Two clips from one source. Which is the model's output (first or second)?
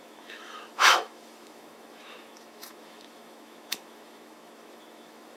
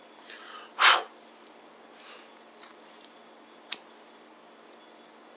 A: first